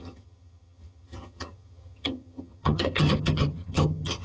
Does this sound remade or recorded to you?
remade